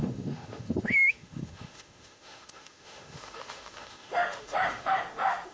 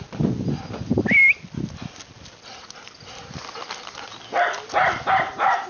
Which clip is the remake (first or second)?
first